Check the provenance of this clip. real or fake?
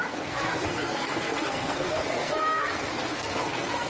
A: fake